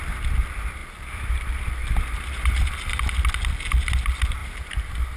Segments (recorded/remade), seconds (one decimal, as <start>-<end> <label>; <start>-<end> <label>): 0.0-1.8 recorded; 1.8-3.1 remade; 3.1-4.4 recorded; 4.4-5.2 remade